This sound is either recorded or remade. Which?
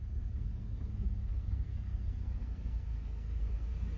remade